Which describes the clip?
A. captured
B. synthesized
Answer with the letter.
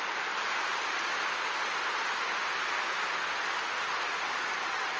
A